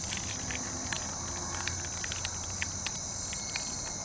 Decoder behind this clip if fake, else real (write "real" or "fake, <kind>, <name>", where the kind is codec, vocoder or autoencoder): real